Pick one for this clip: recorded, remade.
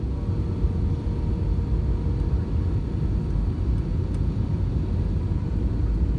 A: recorded